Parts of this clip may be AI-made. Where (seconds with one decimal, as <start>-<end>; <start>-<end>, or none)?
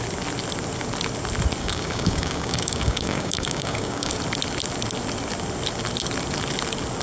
1.6-4.1